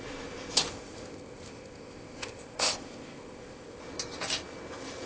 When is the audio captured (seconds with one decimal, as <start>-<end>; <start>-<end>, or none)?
0.0-0.7; 3.8-5.1